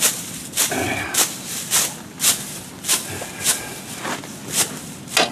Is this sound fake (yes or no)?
no